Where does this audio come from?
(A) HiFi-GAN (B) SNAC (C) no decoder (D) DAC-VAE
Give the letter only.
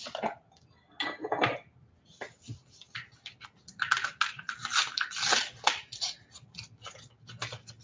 C